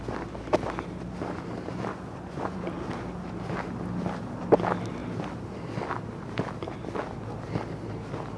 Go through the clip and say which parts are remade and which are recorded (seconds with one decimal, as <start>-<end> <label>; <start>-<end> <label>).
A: 0.0-1.9 recorded; 1.9-2.6 remade; 2.6-8.4 recorded